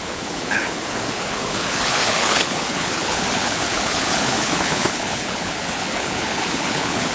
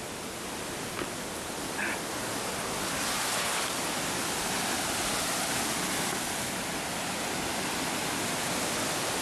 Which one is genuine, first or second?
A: second